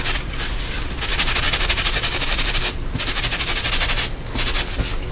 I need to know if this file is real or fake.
real